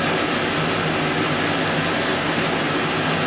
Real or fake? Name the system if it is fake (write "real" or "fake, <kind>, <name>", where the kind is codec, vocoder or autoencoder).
real